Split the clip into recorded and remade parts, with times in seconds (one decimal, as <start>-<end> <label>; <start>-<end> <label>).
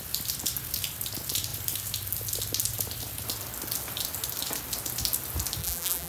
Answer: 0.0-5.6 recorded; 5.6-6.1 remade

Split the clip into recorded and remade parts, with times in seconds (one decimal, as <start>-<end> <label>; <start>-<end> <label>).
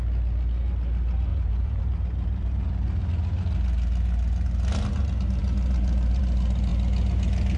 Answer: 0.0-1.3 recorded; 1.3-3.1 remade; 3.1-5.4 recorded; 5.4-6.2 remade; 6.2-7.6 recorded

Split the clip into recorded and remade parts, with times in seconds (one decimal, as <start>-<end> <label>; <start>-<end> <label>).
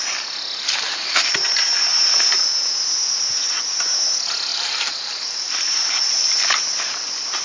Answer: 0.0-4.5 recorded; 4.5-6.6 remade; 6.6-7.4 recorded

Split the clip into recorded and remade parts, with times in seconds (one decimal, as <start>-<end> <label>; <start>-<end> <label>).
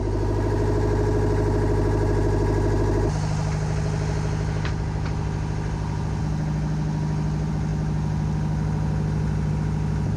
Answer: 0.0-10.2 recorded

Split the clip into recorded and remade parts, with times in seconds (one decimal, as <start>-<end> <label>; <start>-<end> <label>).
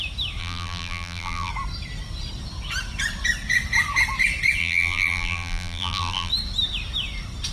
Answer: 0.0-0.4 recorded; 0.4-1.5 remade; 1.5-4.6 recorded; 4.6-6.3 remade; 6.3-7.5 recorded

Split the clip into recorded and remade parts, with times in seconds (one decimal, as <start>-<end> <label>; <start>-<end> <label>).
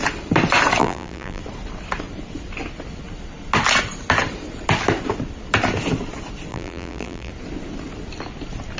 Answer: 0.0-0.8 recorded; 0.8-1.4 remade; 1.4-6.5 recorded; 6.5-7.3 remade; 7.3-8.8 recorded